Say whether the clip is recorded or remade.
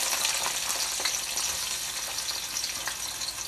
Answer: recorded